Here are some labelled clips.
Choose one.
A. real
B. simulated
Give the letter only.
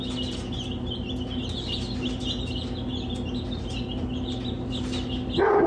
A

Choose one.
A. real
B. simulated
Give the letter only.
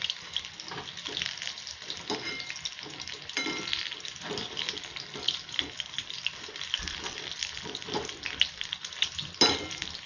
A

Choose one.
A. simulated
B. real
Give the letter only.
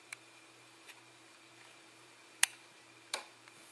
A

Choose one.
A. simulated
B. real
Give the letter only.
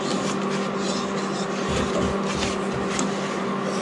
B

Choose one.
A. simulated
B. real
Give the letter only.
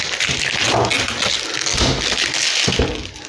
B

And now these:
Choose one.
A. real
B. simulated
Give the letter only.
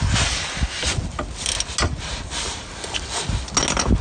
A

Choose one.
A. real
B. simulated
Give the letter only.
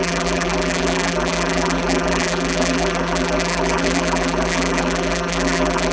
B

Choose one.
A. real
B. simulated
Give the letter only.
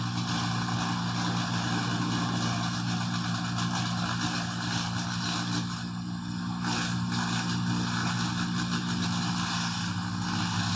A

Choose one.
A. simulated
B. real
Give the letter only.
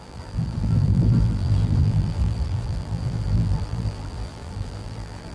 A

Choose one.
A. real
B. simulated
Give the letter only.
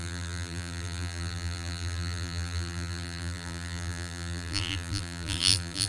B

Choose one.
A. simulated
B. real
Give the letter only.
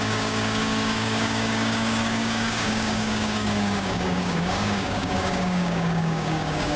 A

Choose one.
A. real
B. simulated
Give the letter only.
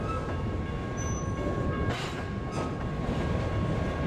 A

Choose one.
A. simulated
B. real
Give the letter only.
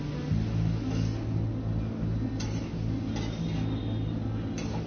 B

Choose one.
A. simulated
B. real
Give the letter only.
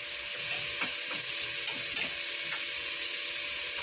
B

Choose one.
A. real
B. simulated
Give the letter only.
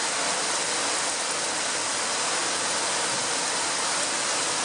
A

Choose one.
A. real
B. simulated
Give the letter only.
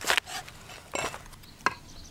A